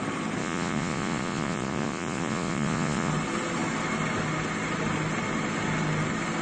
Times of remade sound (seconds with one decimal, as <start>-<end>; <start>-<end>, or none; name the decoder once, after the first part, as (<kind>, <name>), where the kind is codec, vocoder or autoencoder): 0.4-3.1 (vocoder, Vocos)

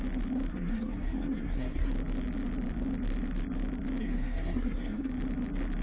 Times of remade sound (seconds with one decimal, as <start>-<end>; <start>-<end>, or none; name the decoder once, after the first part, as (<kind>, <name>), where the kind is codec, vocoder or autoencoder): 0.5-1.9 (codec, SNAC); 4.0-5.1

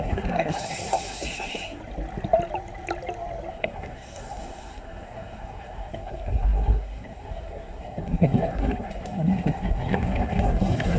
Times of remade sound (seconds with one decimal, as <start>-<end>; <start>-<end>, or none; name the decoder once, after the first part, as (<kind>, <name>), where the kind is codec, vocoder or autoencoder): 0.0-1.8 (codec, SNAC); 3.5-11.0

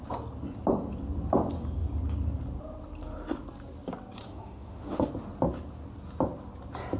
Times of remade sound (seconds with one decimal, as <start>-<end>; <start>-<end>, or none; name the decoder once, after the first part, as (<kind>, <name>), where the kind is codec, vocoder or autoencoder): 4.2-5.1 (autoencoder, DAC-VAE)